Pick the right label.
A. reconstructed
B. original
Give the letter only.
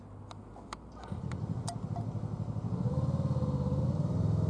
B